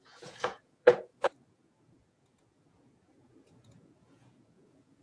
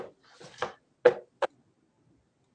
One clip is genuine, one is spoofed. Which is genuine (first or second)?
second